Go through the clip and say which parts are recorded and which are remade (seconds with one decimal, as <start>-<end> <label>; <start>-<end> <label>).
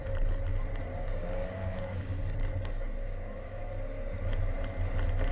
0.0-0.9 recorded; 0.9-3.6 remade; 3.6-5.3 recorded